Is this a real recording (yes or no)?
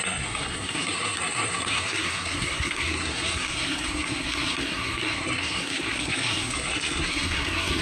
no